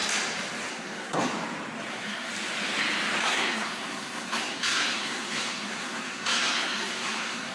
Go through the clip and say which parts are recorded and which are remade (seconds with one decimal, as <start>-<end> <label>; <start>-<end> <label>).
0.0-0.7 recorded; 0.7-1.3 remade; 1.3-1.9 recorded; 1.9-2.3 remade; 2.3-3.2 recorded; 3.2-7.5 remade